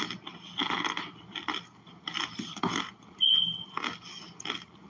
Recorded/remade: recorded